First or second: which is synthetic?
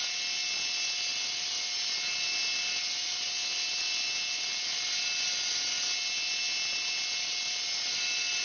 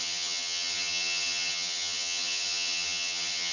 second